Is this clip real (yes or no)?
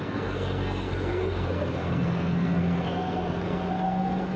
no